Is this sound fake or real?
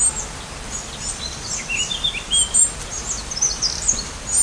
real